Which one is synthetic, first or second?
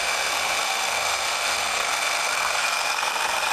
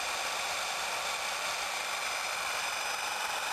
first